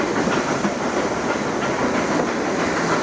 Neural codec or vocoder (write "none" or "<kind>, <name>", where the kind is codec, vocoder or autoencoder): none